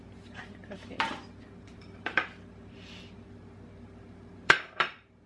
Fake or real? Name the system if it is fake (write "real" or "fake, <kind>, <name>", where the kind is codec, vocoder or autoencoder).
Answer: fake, vocoder, BigVGAN v2